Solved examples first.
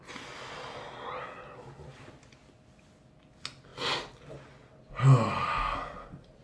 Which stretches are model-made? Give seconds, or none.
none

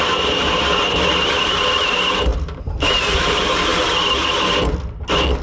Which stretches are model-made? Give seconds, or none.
1.4-3.7 (vocoder, BigVGAN v2)

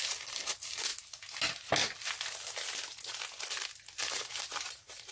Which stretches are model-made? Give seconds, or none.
0.0-0.9 (vocoder, BigVGAN v2); 4.0-5.1

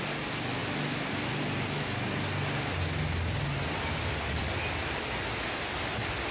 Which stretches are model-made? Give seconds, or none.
none

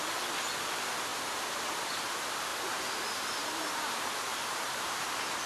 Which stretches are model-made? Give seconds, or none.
2.5-3.7 (vocoder, BigVGAN v2); 4.3-5.1

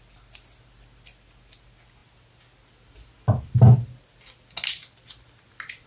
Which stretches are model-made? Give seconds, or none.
none

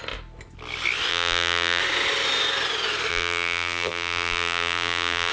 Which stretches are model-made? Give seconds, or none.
1.1-1.8 (vocoder, BigVGAN v2); 3.1-5.3